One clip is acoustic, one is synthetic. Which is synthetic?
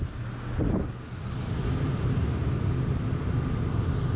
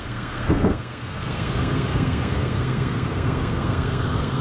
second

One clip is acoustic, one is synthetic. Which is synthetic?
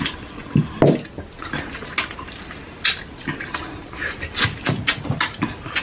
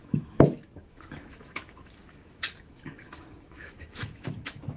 second